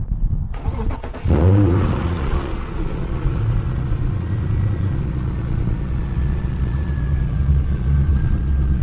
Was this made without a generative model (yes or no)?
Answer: no